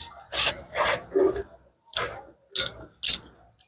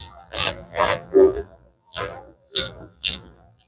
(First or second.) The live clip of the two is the first